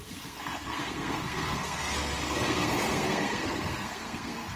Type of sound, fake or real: fake